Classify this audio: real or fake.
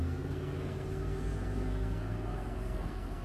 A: fake